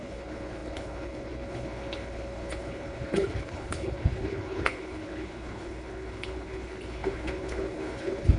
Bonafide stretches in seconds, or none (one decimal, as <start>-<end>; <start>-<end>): none